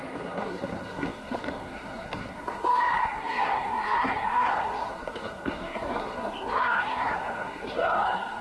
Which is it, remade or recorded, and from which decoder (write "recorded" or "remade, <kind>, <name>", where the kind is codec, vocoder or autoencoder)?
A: remade, codec, SNAC